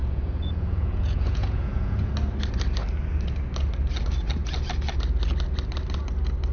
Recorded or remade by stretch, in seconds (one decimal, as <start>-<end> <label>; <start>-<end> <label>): 0.0-2.1 remade; 2.1-6.5 recorded